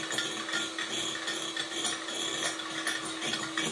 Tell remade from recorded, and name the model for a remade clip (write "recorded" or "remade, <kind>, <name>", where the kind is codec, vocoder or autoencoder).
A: recorded